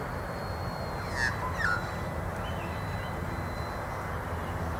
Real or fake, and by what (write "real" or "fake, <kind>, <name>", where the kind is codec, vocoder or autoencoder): real